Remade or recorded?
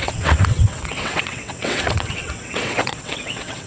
remade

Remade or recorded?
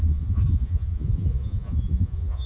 remade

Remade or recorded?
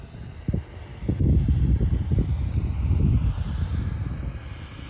recorded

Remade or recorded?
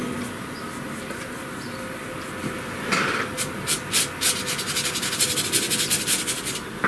recorded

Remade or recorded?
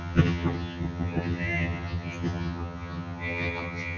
remade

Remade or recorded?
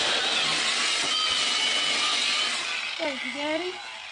recorded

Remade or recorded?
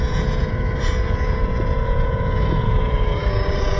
remade